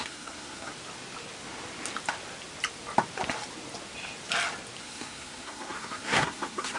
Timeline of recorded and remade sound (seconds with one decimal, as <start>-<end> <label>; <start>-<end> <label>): 0.0-0.7 remade; 0.7-4.8 recorded; 4.8-6.8 remade